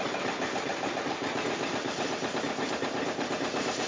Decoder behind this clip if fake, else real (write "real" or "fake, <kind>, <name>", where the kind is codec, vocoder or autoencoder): fake, vocoder, BigVGAN v2